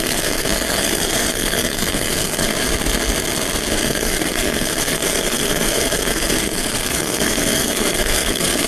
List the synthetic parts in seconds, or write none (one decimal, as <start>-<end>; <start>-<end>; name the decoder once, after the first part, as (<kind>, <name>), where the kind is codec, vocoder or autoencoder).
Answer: 0.0-2.5 (codec, SNAC); 3.7-8.7